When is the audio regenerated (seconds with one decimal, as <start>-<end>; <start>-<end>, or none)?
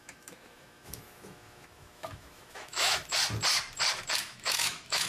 0.0-3.0; 4.2-5.1